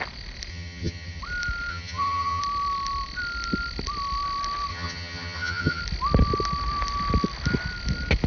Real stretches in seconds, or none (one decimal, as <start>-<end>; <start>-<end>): 0.0-0.5; 1.2-1.7; 2.4-4.7; 5.8-8.3